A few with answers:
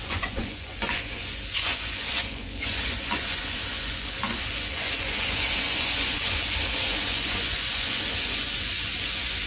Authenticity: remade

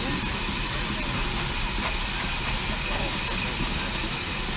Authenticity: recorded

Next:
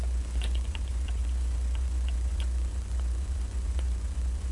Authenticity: remade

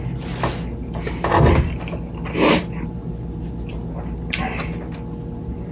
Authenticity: recorded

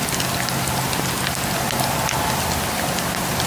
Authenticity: recorded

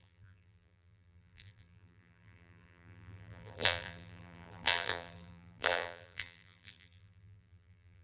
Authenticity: remade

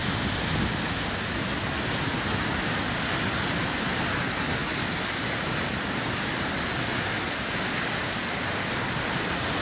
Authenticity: recorded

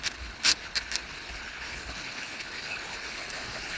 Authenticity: remade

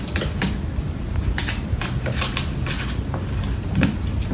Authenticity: recorded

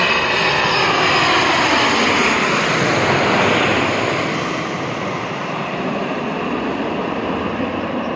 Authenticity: recorded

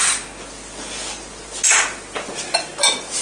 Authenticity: recorded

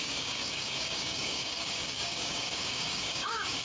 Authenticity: remade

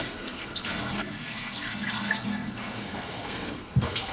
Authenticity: remade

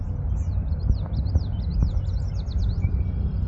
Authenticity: recorded